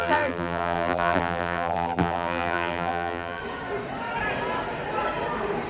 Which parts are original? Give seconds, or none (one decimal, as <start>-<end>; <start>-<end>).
3.4-5.7